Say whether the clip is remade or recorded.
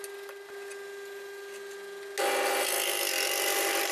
recorded